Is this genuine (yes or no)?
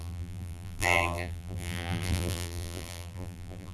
no